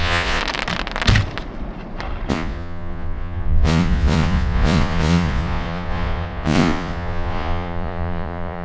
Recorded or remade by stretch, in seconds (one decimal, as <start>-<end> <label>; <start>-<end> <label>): 0.0-0.4 remade; 0.4-2.3 recorded; 2.3-8.6 remade